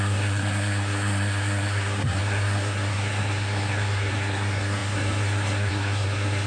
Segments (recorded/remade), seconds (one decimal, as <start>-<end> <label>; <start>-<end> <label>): 0.0-6.5 remade